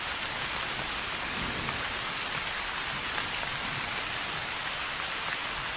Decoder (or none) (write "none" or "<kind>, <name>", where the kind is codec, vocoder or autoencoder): none